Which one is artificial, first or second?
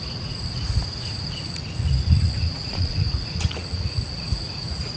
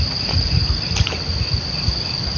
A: first